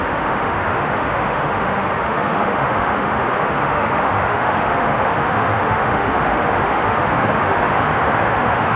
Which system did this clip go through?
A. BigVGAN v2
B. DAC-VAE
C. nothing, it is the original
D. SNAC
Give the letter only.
B